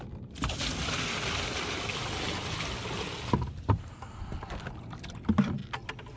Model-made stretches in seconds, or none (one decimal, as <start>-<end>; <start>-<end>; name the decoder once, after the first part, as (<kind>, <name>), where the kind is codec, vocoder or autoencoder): none